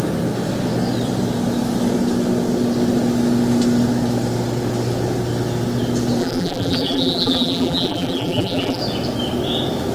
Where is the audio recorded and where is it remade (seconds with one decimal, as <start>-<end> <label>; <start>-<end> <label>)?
0.0-6.2 recorded; 6.2-8.8 remade; 8.8-9.9 recorded